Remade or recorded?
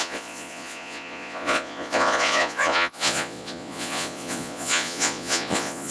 remade